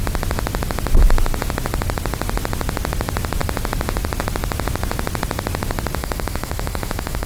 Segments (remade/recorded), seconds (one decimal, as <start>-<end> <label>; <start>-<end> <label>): 0.0-6.0 recorded; 6.0-7.3 remade